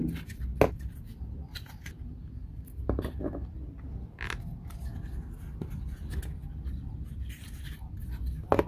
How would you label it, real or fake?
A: real